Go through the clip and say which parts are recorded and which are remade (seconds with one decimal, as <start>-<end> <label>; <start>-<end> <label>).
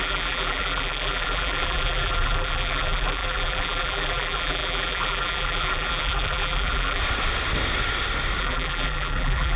0.0-7.0 remade; 7.0-8.4 recorded; 8.4-9.6 remade